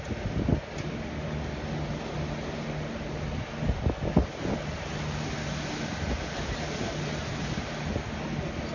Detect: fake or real real